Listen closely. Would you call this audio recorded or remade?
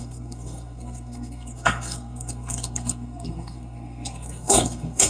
remade